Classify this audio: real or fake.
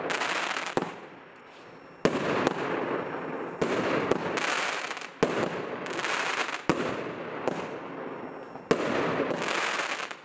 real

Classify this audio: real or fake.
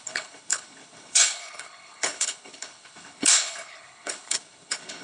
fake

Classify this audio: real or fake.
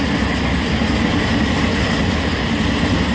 real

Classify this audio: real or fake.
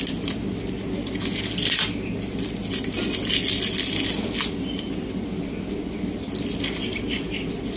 real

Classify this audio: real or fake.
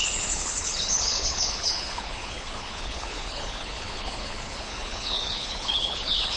fake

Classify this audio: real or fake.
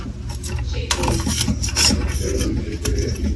real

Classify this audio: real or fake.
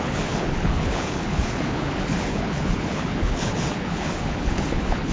fake